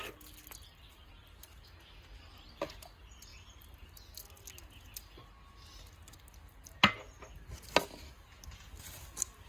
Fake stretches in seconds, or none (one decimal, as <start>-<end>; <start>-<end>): none